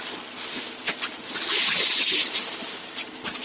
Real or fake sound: real